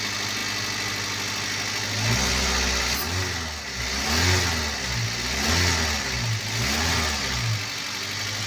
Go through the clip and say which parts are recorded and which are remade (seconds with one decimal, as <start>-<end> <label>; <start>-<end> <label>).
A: 0.0-8.5 recorded